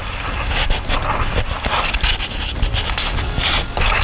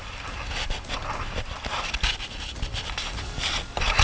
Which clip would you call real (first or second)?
first